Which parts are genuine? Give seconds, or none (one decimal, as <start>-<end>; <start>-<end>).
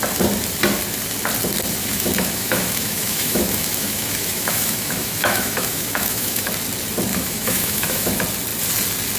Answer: 0.0-1.8; 6.5-7.1; 8.1-9.2